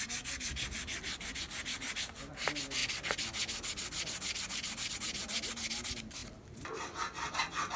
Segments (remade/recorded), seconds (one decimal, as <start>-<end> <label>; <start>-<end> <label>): 0.0-7.8 recorded